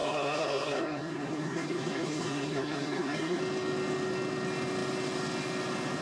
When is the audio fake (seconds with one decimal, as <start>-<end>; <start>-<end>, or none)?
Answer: 0.0-3.4